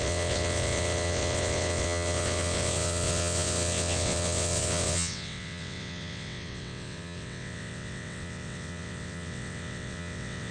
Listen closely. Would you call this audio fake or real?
fake